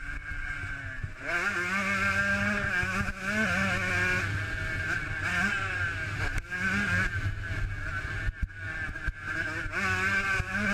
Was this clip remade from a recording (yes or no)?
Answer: no